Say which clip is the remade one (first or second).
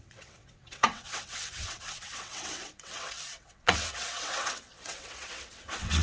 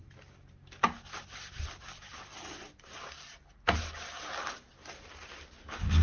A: first